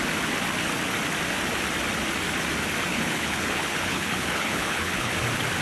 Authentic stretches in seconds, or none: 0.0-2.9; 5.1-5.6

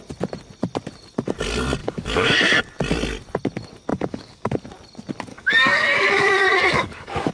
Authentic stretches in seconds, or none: 0.0-1.8; 2.6-3.9; 4.5-5.3

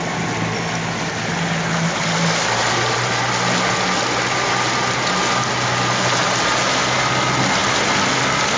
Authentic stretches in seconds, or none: 0.0-8.6

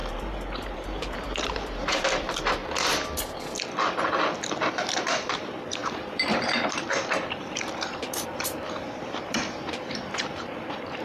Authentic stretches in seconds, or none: 2.6-4.7